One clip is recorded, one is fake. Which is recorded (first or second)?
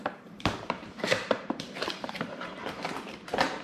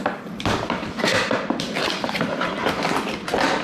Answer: second